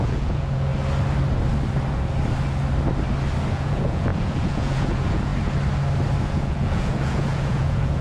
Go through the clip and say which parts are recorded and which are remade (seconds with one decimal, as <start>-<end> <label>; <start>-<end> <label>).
0.0-0.7 remade; 0.7-3.5 recorded; 3.5-5.3 remade; 5.3-6.2 recorded; 6.2-8.0 remade